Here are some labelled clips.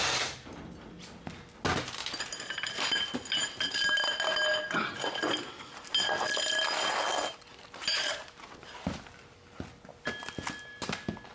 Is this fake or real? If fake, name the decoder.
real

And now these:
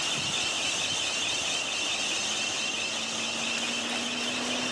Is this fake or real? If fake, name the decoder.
real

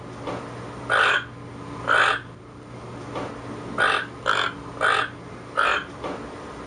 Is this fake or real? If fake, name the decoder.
real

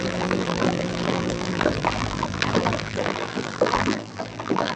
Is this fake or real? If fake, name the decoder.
fake, vocoder, BigVGAN v2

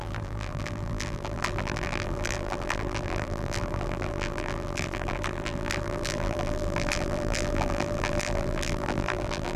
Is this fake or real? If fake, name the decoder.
fake, vocoder, BigVGAN v2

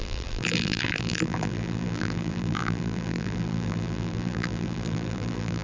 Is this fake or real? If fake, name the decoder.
fake, vocoder, BigVGAN v2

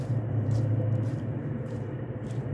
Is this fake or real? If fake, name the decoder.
fake, vocoder, BigVGAN v2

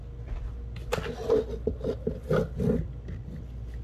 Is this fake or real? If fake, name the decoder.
real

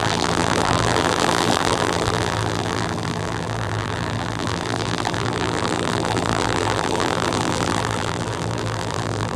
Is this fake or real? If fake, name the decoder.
fake, vocoder, BigVGAN v2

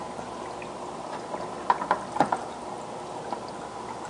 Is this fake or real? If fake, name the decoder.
real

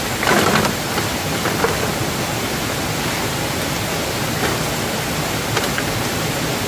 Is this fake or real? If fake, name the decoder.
real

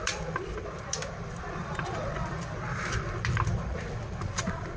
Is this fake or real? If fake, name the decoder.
fake, vocoder, BigVGAN v2